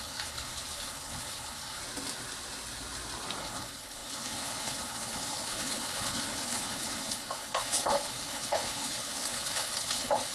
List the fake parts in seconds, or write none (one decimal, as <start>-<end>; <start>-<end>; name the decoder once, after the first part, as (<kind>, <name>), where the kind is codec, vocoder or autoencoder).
0.0-1.8 (codec, HILCodec); 3.4-10.3